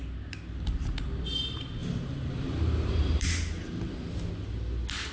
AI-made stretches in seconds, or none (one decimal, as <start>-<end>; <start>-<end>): 1.8-3.9